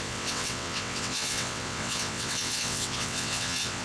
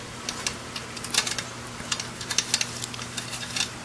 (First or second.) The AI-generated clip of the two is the first